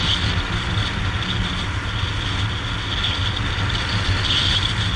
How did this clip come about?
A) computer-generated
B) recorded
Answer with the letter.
B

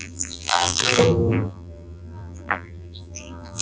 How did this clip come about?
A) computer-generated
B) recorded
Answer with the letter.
A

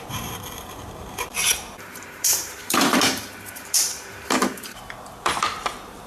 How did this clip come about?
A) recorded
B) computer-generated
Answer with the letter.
B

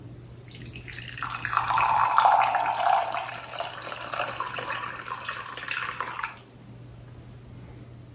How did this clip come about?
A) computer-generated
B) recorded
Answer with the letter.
B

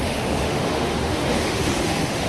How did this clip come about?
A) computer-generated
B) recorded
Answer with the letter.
A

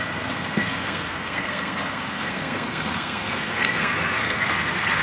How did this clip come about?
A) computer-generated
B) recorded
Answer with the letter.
A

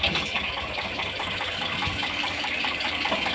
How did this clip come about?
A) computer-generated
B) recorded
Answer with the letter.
A